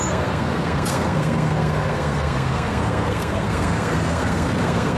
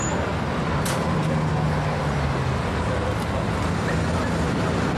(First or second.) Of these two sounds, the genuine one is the second